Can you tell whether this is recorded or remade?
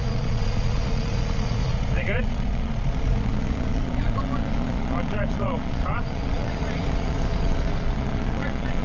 remade